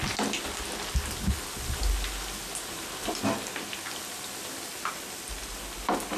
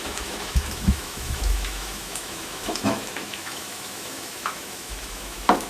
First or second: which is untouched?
first